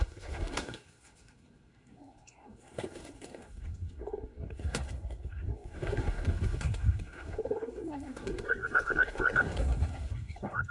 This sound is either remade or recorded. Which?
remade